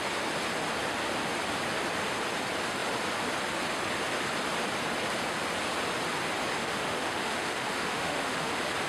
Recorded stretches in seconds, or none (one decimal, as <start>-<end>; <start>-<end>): 0.0-6.6; 8.5-8.9